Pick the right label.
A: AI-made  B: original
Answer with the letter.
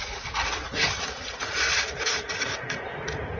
A